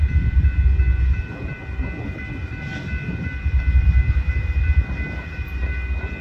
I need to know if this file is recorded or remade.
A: recorded